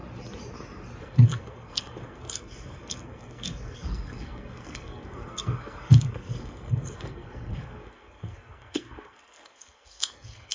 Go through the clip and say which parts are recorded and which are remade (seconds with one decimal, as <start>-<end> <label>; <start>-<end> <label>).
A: 0.0-1.0 recorded; 1.0-10.5 remade